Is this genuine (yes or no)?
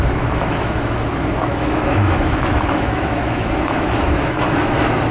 no